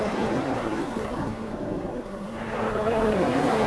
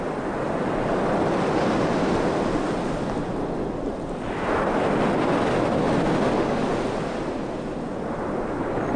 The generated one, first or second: first